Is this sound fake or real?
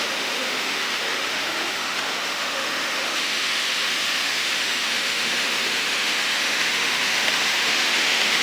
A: fake